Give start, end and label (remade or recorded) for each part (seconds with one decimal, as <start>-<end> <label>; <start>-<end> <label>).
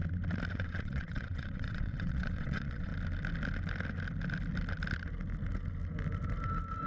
0.0-0.5 recorded; 0.5-2.9 remade; 2.9-6.9 recorded